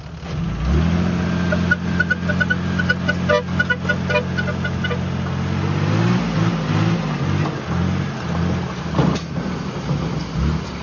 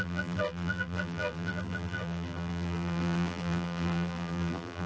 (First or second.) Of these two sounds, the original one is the first